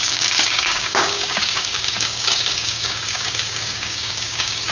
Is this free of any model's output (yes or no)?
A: no